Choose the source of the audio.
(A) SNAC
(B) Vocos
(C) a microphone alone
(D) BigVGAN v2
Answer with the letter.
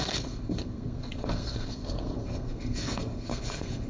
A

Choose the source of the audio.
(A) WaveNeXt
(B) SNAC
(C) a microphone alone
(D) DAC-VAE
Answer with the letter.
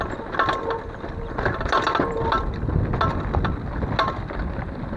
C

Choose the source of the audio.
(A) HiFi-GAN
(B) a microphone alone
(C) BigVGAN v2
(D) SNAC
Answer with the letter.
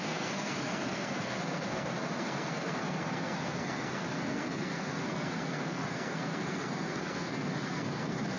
D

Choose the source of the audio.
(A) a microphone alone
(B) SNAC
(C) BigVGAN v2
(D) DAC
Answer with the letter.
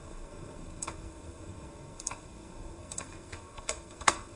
B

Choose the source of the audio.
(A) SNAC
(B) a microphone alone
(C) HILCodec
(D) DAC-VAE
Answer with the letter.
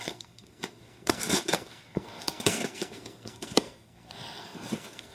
A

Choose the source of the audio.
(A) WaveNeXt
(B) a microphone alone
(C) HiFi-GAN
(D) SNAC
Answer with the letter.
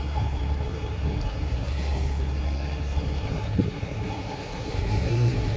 D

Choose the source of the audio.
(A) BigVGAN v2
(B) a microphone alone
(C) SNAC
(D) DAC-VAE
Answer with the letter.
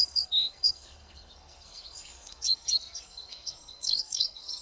C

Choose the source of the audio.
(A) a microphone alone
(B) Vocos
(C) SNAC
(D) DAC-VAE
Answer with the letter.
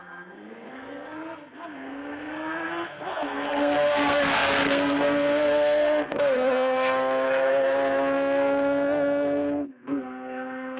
C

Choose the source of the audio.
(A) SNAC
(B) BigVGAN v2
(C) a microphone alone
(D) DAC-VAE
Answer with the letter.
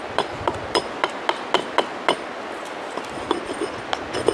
C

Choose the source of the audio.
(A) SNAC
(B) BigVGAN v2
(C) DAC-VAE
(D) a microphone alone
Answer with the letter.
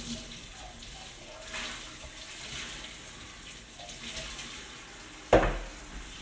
D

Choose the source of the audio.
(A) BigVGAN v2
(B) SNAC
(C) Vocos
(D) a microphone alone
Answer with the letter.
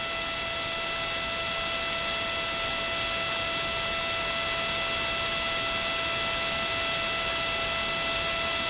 D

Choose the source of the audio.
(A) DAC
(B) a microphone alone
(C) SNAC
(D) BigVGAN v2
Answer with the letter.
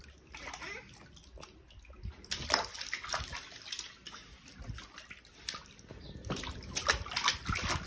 B